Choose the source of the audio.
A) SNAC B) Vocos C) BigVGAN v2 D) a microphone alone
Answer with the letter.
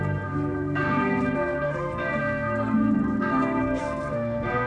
A